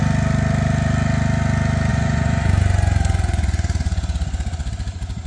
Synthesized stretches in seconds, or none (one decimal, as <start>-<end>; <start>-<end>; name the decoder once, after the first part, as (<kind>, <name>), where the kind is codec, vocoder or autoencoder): 1.9-4.7 (vocoder, Vocos)